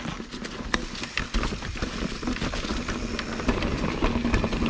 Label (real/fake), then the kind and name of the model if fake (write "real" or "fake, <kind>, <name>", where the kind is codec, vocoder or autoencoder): real